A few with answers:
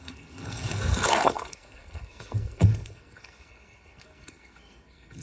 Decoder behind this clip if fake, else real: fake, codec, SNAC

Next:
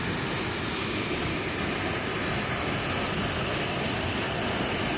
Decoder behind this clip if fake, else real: real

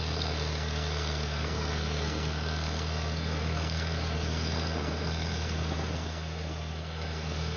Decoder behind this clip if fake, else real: fake, codec, SNAC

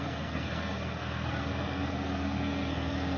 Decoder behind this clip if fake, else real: fake, codec, SNAC